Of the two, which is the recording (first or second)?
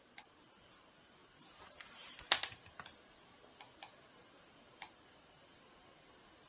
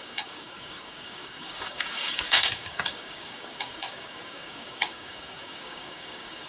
first